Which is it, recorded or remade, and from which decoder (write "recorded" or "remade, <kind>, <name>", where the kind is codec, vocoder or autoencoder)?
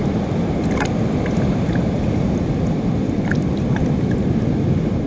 recorded